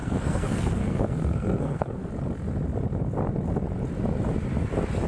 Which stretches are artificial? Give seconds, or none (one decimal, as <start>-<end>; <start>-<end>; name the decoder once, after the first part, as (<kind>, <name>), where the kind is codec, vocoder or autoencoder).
0.0-2.1 (codec, SNAC)